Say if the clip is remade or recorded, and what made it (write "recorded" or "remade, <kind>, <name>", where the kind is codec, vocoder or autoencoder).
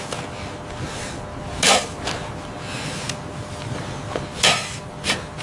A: recorded